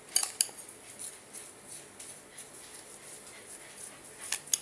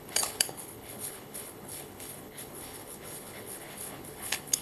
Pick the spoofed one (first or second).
second